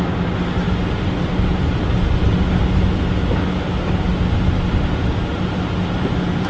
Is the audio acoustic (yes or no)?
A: yes